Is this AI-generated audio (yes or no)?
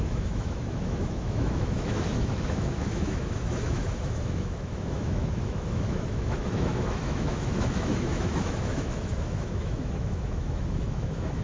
yes